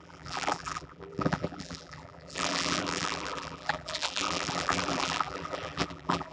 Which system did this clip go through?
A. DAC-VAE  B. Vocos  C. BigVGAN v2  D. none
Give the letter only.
C